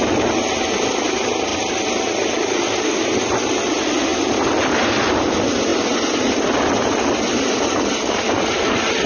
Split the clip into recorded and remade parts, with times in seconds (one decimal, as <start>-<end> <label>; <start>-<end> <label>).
0.0-9.1 recorded